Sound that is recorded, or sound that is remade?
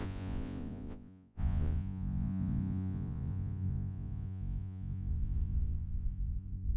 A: remade